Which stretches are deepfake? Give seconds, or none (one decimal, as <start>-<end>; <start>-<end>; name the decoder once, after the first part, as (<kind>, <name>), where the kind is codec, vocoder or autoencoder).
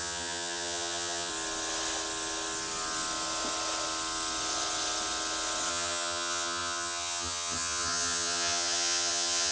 0.0-1.3 (vocoder, HiFi-GAN); 5.7-9.5